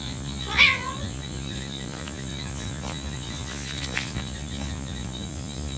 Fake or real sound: fake